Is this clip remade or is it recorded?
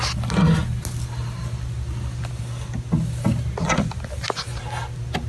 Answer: recorded